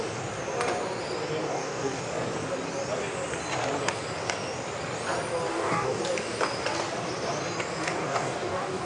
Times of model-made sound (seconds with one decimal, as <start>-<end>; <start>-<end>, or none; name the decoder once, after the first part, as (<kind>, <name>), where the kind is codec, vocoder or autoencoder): 1.4-2.0 (codec, DAC); 5.5-6.0; 8.0-8.8